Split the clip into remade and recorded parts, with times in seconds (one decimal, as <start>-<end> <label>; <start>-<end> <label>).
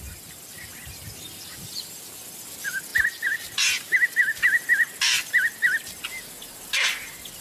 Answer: 0.0-7.4 recorded